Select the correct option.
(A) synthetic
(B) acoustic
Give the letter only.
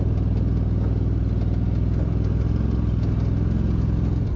B